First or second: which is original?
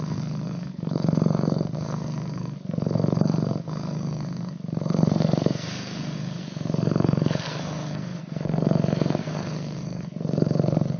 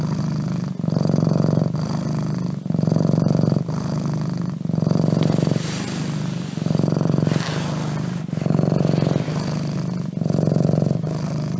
second